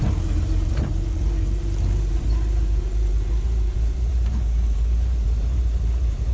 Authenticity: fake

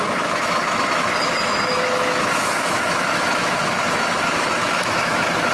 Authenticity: fake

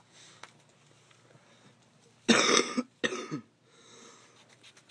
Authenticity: real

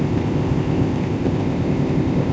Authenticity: fake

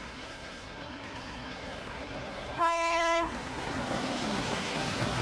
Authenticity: fake